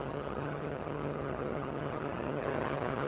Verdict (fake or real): fake